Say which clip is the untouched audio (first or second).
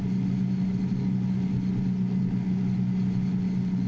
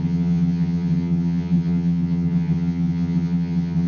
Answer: first